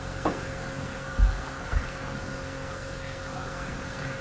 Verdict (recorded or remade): remade